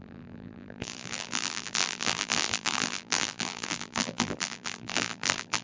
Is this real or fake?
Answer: fake